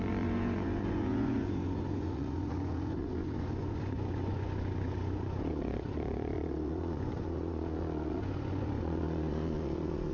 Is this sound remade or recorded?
remade